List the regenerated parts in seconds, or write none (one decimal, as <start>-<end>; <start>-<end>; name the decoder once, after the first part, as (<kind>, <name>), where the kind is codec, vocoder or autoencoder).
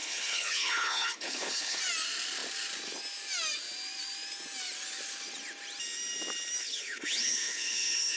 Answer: 0.0-1.8 (codec, HILCodec); 6.6-8.2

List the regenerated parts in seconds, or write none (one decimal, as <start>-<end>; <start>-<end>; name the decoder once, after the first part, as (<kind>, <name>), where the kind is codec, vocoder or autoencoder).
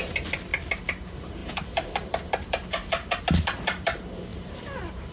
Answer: 1.4-3.2 (vocoder, BigVGAN v2); 4.3-5.1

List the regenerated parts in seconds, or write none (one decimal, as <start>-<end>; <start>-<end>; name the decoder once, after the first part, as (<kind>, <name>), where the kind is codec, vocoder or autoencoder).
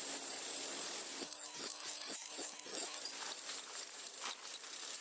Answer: 1.2-3.0 (autoencoder, DAC-VAE)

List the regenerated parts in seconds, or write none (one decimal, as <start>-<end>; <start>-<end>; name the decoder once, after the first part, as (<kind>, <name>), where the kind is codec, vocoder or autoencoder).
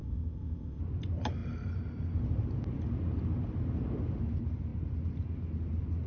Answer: 0.0-0.8 (codec, ZipCodec)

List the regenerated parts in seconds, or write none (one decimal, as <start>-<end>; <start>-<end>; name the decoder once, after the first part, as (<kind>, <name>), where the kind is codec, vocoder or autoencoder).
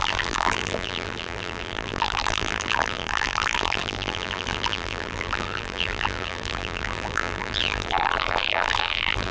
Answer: 0.0-9.3 (vocoder, BigVGAN v2)